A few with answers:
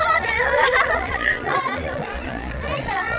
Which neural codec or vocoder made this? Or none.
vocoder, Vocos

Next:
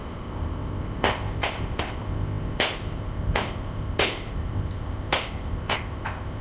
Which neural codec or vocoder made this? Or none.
codec, ZipCodec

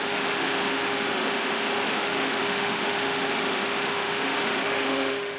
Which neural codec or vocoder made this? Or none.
autoencoder, DAC-VAE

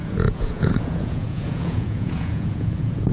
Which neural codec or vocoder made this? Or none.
vocoder, Vocos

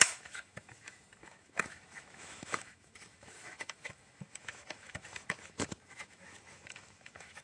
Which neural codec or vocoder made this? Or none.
autoencoder, DAC-VAE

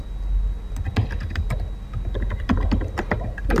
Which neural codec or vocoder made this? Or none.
none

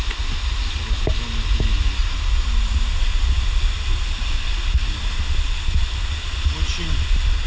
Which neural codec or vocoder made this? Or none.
none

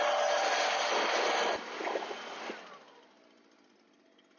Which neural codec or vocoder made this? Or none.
none